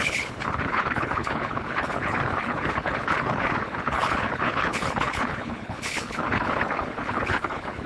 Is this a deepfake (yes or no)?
yes